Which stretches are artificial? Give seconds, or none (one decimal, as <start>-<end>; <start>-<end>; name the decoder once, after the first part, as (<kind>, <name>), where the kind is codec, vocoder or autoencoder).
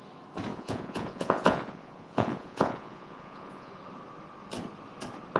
0.5-3.7 (vocoder, Vocos)